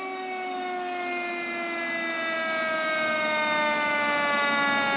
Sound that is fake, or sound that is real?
real